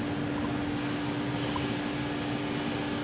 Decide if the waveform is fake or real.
real